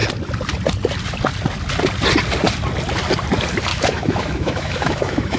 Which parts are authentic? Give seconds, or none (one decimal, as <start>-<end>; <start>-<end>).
0.0-3.7